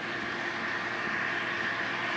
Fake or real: real